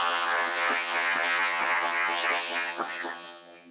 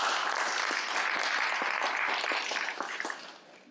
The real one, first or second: second